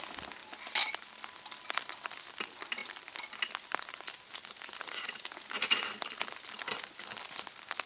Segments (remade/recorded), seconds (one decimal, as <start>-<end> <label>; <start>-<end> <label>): 0.0-7.9 recorded